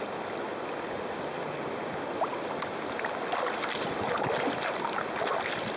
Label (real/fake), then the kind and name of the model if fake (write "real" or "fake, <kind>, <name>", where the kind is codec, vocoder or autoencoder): real